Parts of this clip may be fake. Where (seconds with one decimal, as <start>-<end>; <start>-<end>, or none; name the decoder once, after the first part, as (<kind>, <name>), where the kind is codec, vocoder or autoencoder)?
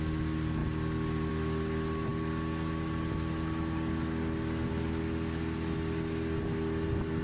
none